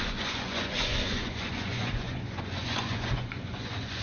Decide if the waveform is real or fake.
fake